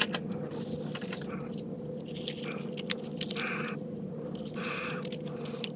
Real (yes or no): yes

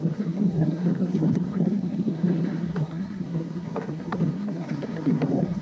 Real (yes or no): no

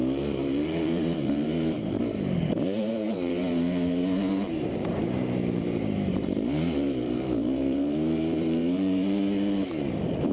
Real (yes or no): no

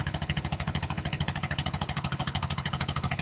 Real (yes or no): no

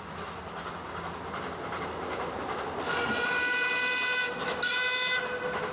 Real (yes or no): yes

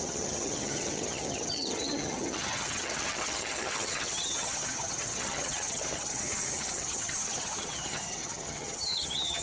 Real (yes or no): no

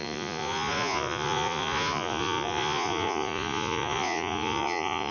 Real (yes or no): no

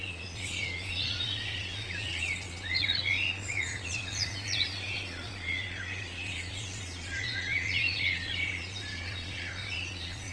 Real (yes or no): no